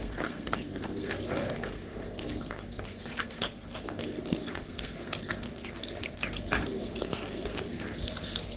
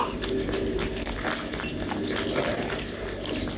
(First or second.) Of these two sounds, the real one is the second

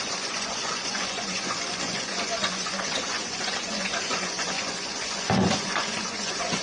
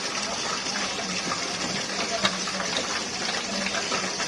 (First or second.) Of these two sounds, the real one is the second